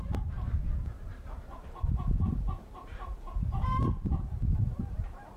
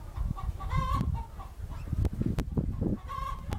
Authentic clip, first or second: second